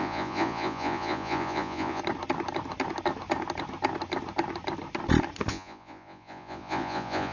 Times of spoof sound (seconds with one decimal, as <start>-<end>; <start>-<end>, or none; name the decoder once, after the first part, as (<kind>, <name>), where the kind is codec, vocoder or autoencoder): 0.0-2.0 (vocoder, Vocos); 5.5-7.3